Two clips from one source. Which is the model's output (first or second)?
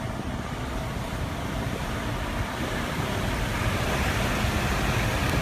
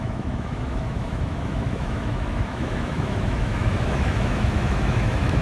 second